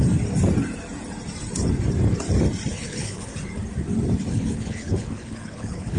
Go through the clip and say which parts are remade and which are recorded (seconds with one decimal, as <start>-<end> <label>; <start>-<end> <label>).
0.0-2.7 recorded; 2.7-3.3 remade; 3.3-4.3 recorded; 4.3-6.0 remade